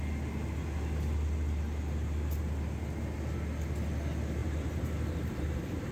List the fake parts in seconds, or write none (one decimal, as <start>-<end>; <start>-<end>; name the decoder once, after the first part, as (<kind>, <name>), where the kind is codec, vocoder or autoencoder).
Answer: 4.4-5.9 (vocoder, BigVGAN v2)